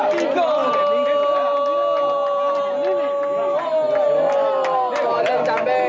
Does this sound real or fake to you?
real